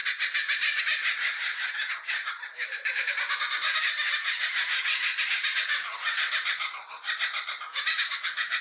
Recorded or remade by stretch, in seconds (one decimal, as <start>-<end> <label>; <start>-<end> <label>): 0.0-2.5 recorded; 2.5-3.1 remade; 3.1-7.7 recorded; 7.7-8.6 remade